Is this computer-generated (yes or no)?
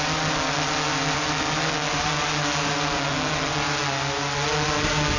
no